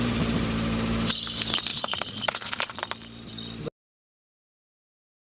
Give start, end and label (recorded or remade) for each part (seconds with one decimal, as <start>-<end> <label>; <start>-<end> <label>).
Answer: 0.0-1.7 recorded; 1.7-2.8 remade; 2.8-5.3 recorded